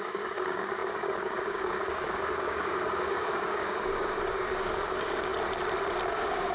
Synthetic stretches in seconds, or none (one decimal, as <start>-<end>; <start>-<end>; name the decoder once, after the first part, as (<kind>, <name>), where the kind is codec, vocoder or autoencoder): 0.0-5.3 (codec, DAC); 6.1-6.5